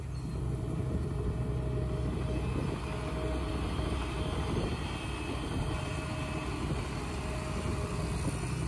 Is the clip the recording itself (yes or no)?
yes